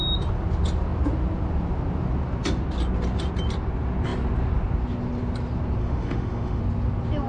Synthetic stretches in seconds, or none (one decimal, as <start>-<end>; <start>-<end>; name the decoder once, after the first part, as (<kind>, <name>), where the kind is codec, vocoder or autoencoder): 5.8-6.6 (autoencoder, DAC-VAE)